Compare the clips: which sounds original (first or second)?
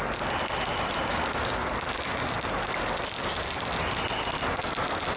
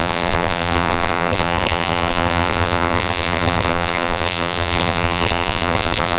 first